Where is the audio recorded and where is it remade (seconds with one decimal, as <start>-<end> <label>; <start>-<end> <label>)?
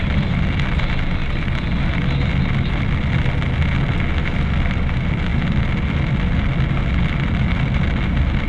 0.0-8.5 recorded